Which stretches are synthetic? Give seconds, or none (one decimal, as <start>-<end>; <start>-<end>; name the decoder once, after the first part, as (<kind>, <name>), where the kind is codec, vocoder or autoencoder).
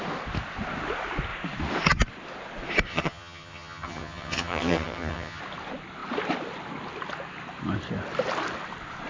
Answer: 2.9-5.4 (vocoder, HiFi-GAN)